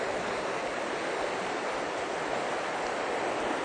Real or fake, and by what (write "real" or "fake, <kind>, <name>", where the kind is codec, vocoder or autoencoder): real